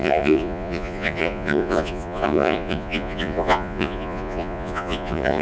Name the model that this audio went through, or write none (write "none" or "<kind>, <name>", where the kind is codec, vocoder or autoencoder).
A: vocoder, Vocos